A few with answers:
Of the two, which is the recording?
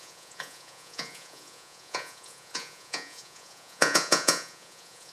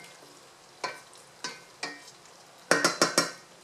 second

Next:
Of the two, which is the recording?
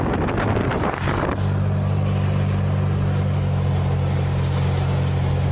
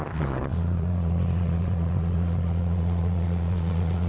first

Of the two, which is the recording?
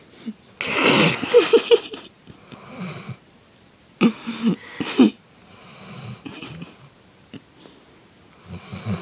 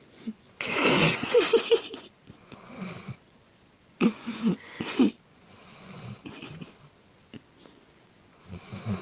first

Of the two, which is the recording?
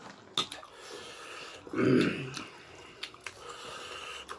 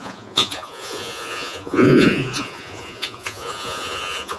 first